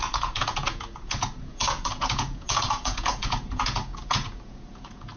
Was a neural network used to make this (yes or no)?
yes